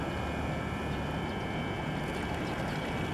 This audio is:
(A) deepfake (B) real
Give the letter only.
B